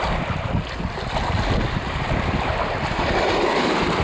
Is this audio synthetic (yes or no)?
no